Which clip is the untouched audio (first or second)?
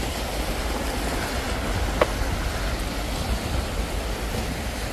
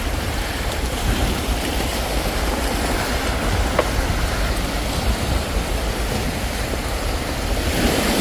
first